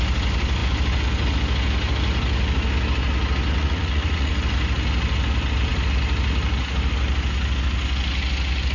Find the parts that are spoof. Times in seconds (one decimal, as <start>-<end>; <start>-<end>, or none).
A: 3.6-4.3